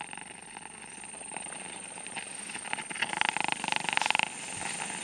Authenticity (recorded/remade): recorded